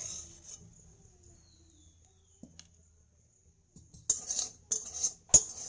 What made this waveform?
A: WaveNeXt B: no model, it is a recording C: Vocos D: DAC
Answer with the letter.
B